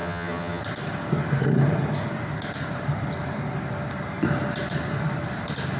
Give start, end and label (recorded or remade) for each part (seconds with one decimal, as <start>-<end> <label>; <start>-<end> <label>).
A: 0.0-0.6 remade; 0.6-5.8 recorded